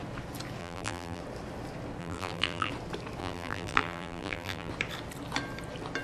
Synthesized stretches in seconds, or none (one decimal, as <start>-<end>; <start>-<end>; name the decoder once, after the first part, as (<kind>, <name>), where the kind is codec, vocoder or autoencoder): 0.6-1.2 (vocoder, BigVGAN v2); 2.0-2.7; 3.2-4.7